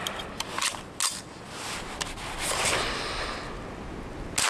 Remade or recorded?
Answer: recorded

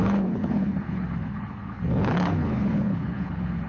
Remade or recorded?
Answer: remade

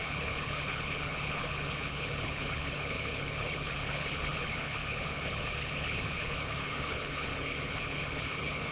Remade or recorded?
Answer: remade